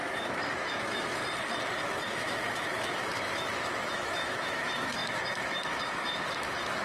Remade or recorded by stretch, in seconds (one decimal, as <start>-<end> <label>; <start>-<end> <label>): 0.0-1.2 remade; 1.2-1.8 recorded; 1.8-6.8 remade